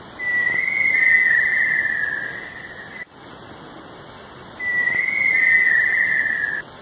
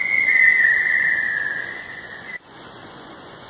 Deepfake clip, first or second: second